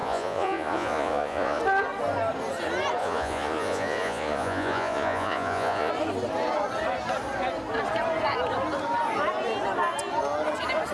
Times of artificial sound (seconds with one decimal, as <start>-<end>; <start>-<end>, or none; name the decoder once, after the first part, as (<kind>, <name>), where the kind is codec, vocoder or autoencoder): 0.0-1.6 (vocoder, Vocos); 3.0-5.9